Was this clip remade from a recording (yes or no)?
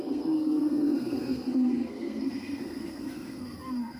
yes